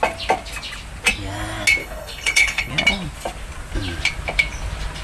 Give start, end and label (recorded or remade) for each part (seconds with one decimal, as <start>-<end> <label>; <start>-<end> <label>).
0.0-1.8 recorded; 1.8-2.7 remade; 2.7-5.0 recorded